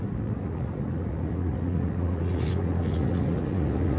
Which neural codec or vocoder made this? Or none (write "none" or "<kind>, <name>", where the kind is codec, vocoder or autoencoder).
vocoder, Vocos